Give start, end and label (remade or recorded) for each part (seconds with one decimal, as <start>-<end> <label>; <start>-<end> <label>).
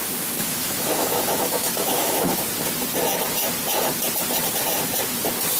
0.0-2.4 remade; 2.4-5.6 recorded